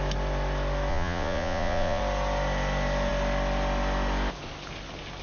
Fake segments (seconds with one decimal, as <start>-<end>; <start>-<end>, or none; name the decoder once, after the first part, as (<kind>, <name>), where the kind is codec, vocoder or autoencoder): 0.9-2.0 (vocoder, Vocos)